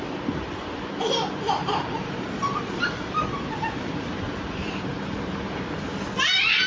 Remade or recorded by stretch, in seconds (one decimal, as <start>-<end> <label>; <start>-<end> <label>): 0.0-1.6 recorded; 1.6-5.6 remade; 5.6-6.7 recorded